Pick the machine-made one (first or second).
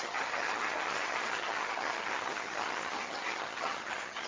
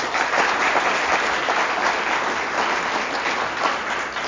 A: first